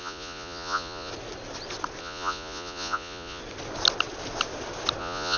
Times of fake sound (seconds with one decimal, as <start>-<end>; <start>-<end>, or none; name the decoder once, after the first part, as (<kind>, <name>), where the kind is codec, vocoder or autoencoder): 0.0-1.1 (vocoder, Vocos); 2.0-3.4; 5.0-5.4